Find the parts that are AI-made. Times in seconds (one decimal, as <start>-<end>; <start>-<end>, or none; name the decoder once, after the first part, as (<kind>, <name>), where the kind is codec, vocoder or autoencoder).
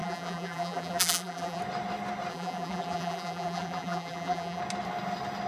0.0-1.6 (vocoder, BigVGAN v2); 2.3-4.6